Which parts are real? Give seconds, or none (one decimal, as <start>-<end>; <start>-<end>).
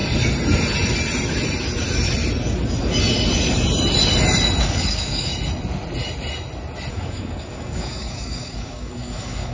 0.0-4.6; 5.3-6.9